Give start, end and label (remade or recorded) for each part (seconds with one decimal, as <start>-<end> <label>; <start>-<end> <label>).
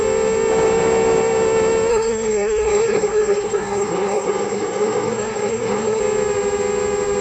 0.0-1.9 recorded; 1.9-6.0 remade; 6.0-7.2 recorded